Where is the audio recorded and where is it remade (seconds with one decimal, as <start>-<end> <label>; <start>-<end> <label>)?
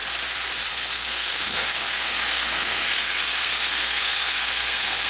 0.0-0.7 recorded; 0.7-5.1 remade